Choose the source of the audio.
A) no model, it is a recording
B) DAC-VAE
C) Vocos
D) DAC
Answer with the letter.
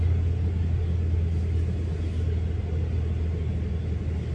A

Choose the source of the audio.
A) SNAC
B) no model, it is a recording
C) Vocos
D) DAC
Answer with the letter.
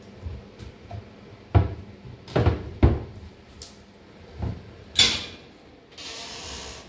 B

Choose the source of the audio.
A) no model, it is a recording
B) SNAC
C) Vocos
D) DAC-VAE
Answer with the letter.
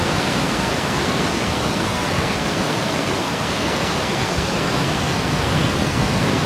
B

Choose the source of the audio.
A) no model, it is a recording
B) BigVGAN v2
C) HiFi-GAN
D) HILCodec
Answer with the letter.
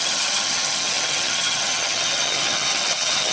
C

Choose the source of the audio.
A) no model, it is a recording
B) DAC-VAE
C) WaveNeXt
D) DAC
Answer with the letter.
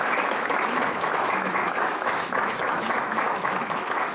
B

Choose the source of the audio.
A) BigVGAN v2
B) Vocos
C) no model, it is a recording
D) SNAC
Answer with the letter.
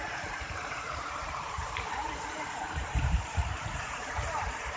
A